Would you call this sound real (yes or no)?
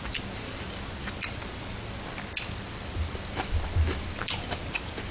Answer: yes